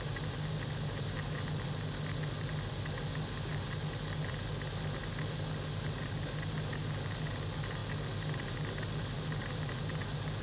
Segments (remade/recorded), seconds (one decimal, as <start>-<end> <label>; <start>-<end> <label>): 0.0-10.4 recorded